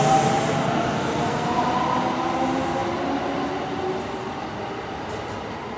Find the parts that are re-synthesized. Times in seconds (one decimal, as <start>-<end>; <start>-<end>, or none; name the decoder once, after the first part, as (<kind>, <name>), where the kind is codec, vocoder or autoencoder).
0.6-1.6 (codec, SNAC)